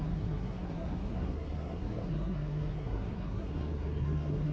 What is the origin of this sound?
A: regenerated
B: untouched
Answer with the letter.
A